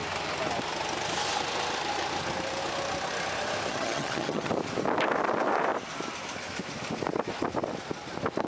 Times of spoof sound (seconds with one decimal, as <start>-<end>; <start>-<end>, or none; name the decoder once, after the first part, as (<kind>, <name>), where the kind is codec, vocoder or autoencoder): 3.7-4.5 (vocoder, HiFi-GAN)